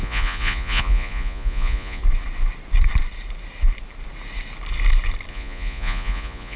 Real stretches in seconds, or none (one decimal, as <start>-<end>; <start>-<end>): 2.0-5.3